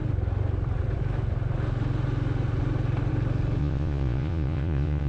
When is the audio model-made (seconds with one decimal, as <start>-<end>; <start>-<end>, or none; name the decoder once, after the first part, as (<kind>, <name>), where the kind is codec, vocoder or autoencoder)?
3.6-5.1 (vocoder, Vocos)